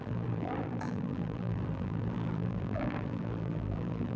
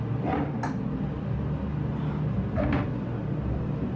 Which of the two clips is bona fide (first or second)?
second